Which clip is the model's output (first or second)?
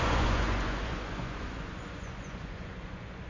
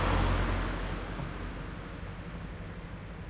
first